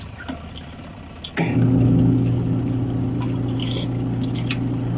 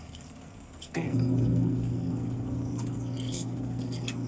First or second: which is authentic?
first